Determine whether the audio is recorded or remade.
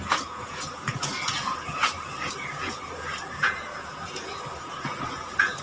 remade